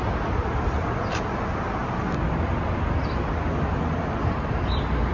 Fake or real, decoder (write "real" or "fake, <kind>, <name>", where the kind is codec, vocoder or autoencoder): real